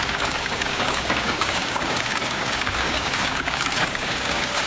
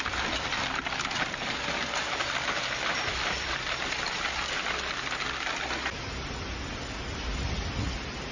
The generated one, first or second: first